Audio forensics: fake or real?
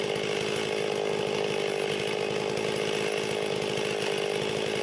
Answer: real